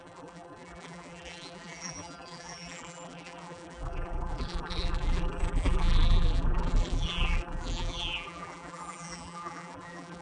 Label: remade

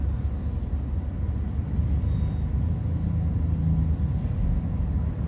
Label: recorded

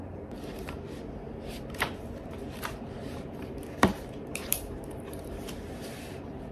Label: remade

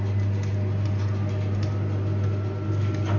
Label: recorded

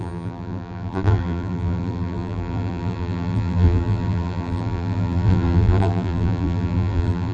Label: remade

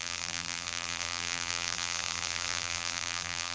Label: remade